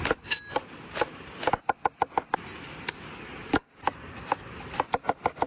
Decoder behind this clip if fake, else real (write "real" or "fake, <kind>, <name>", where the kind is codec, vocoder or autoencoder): real